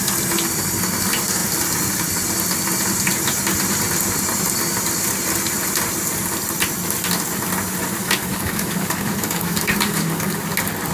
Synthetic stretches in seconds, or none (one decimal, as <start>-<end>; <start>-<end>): 8.0-10.4